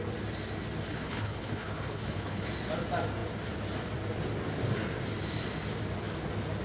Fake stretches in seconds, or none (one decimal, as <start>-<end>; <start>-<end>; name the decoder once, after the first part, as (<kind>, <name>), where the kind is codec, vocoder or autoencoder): 0.9-2.5 (codec, HILCodec)